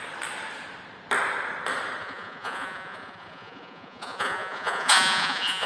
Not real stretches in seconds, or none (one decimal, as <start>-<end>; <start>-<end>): 2.0-5.7